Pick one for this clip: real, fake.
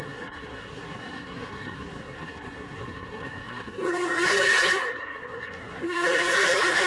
fake